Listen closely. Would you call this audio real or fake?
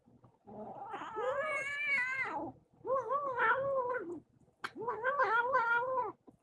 real